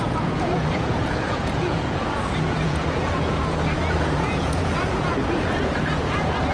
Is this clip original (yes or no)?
no